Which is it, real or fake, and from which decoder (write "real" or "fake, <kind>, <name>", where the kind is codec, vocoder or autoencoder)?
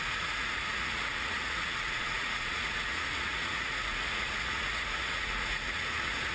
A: fake, vocoder, Vocos